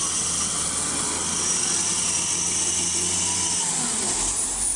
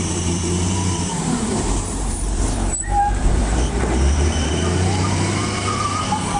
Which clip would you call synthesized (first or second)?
second